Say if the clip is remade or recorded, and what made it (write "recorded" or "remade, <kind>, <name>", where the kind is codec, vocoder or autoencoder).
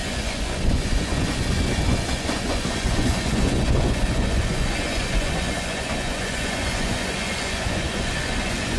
remade, vocoder, Vocos